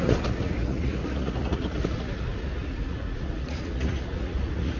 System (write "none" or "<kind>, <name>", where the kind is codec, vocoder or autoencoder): vocoder, Vocos